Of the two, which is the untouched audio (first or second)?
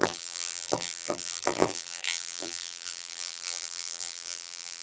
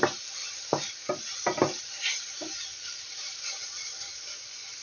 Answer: second